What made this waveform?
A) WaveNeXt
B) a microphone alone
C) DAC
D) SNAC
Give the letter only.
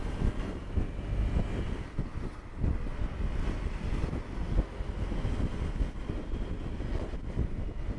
B